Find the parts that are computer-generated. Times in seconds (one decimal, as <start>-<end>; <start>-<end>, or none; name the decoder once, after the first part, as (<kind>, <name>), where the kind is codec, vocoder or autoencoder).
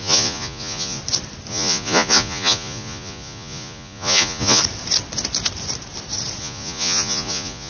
0.0-1.0 (vocoder, Vocos); 1.5-4.6; 6.4-7.7